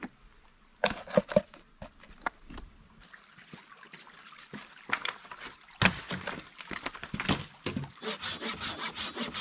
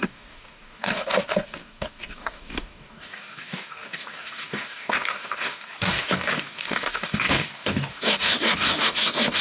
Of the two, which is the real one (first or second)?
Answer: first